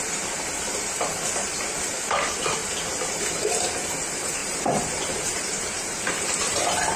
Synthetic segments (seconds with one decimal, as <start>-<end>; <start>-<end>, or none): 4.4-7.0